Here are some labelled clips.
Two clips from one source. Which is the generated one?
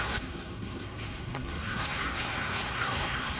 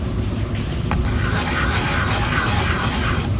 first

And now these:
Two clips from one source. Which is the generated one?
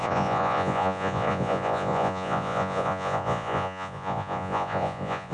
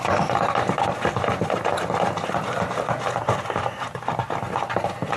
first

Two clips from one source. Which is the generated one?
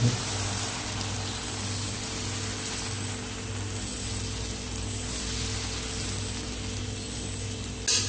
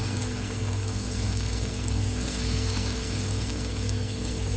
second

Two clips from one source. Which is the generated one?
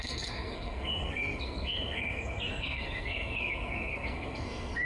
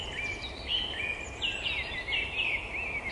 first